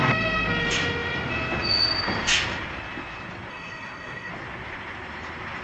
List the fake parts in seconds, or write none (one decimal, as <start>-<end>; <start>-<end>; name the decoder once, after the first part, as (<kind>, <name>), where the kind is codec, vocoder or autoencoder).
3.5-4.3 (codec, SNAC)